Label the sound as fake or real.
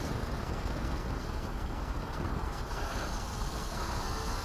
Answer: fake